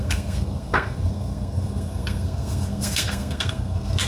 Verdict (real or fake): fake